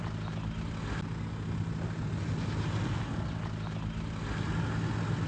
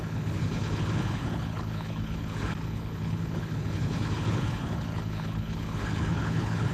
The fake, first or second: second